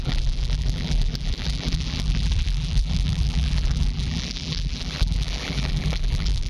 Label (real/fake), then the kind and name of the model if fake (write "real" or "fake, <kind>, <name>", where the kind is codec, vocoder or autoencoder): fake, vocoder, BigVGAN v2